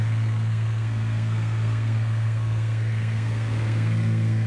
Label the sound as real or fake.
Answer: fake